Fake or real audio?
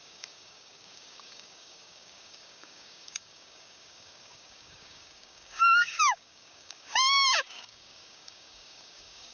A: fake